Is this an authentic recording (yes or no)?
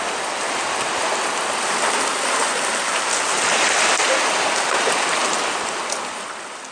yes